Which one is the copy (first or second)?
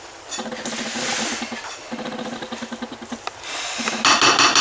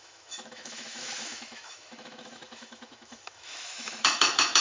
second